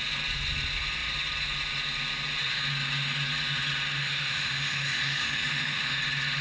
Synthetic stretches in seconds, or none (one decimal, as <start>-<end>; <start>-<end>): 4.0-6.0